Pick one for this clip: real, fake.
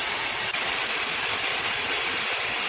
real